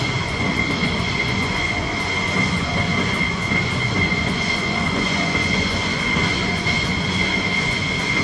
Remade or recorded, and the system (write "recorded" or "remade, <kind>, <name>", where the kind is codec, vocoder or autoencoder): remade, vocoder, Vocos